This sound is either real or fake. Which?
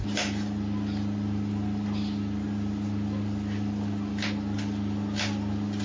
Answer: real